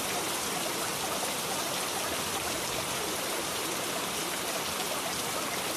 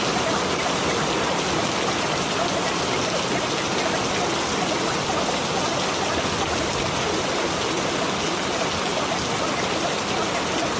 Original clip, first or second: second